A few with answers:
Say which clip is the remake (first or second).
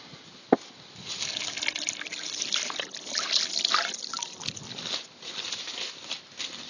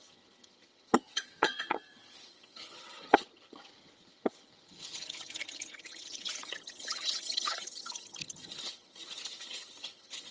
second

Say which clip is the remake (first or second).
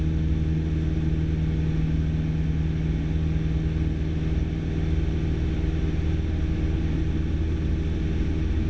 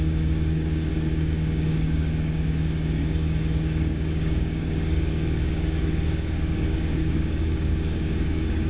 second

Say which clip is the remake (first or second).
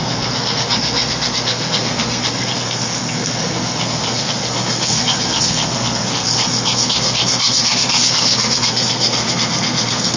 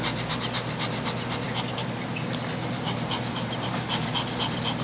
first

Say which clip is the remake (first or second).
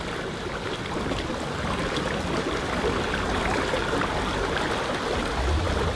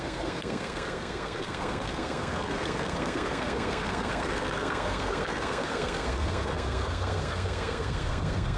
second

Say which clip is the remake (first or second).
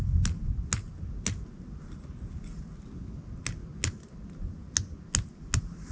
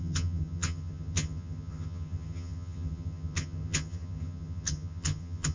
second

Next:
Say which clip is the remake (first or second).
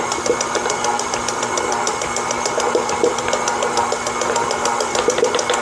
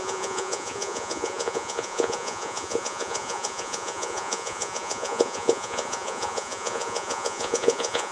second